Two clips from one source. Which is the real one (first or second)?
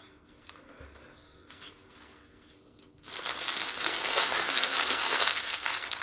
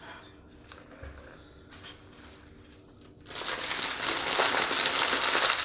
second